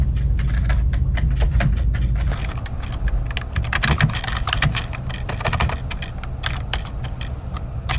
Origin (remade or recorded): recorded